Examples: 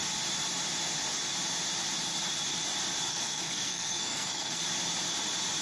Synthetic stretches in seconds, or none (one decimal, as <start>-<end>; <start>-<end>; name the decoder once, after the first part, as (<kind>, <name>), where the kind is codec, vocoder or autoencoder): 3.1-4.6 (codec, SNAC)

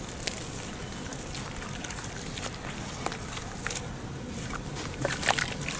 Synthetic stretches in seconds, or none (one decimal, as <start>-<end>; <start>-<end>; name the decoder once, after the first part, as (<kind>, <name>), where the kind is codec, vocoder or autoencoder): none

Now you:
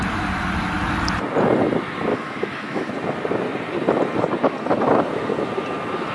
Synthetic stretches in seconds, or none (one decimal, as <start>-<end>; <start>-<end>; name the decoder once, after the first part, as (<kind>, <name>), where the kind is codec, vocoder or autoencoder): 2.1-2.9 (autoencoder, DAC-VAE)

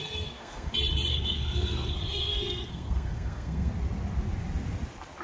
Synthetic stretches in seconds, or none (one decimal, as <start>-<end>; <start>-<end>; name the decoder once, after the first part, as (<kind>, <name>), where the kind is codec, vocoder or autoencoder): 0.0-0.7 (codec, SNAC); 1.1-3.7

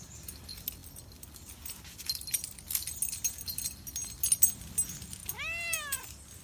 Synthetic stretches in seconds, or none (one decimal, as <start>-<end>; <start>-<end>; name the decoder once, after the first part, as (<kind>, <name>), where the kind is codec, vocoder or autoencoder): none

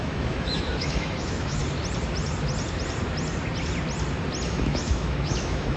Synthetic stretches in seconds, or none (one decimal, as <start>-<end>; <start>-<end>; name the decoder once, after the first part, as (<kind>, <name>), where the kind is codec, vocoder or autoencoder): 0.0-1.6 (autoencoder, DAC-VAE); 4.5-5.8